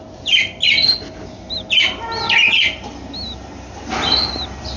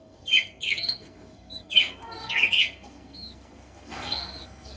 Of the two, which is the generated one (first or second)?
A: second